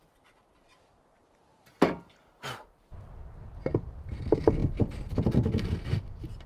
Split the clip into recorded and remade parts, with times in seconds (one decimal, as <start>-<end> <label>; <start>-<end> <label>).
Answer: 0.0-1.1 recorded; 1.1-1.9 remade; 1.9-6.5 recorded